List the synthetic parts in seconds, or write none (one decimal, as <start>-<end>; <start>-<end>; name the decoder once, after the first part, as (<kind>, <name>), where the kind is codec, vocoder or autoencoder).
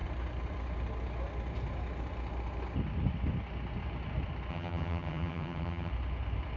4.5-5.9 (vocoder, HiFi-GAN)